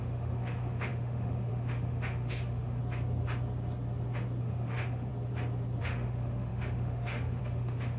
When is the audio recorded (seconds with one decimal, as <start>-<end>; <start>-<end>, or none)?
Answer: 2.8-4.4; 5.1-5.8